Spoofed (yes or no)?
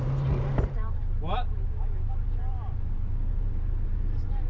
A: yes